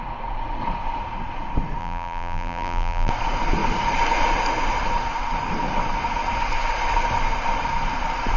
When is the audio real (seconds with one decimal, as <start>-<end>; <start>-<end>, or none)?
0.0-1.8; 3.1-8.4